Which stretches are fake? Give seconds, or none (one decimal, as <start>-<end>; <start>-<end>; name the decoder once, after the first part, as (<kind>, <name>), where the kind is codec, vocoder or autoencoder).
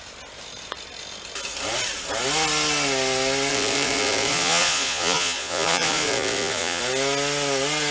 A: 3.5-6.8 (vocoder, Vocos)